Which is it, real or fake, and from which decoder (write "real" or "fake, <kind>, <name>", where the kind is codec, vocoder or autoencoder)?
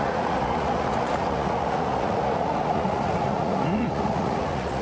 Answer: fake, vocoder, Vocos